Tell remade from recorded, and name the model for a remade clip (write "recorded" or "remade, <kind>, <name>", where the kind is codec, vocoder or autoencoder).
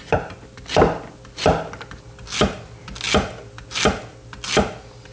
recorded